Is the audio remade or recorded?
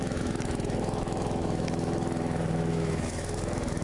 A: remade